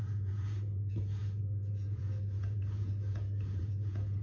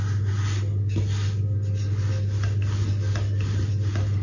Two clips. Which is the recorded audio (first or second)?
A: second